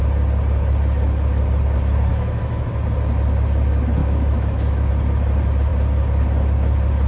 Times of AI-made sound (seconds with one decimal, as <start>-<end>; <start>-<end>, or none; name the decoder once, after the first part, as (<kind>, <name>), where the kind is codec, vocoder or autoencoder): 2.1-2.7 (autoencoder, DAC-VAE); 4.0-4.9